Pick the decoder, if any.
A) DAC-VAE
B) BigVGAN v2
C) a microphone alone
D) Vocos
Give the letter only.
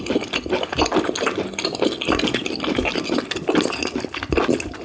C